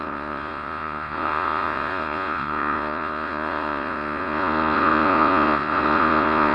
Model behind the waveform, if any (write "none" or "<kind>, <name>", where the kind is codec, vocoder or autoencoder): vocoder, Vocos